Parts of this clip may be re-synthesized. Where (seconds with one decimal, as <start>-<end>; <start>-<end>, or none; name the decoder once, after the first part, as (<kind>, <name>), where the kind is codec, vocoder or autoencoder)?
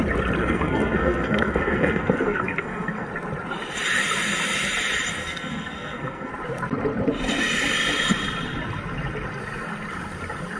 0.4-3.1 (codec, SNAC); 5.2-6.3